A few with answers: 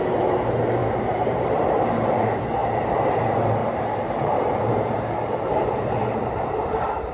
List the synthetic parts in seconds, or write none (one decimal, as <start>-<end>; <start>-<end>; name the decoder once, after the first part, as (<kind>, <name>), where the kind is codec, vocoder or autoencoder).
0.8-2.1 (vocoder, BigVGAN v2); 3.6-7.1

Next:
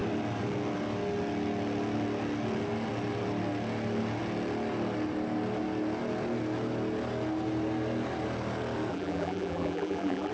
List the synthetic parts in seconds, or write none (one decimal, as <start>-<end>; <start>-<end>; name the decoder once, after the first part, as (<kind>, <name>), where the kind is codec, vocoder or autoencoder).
8.9-10.3 (vocoder, BigVGAN v2)

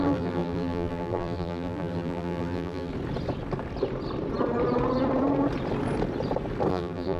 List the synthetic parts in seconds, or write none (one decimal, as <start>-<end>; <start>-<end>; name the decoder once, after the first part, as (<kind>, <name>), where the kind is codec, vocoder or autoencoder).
0.0-2.9 (vocoder, BigVGAN v2); 6.7-7.2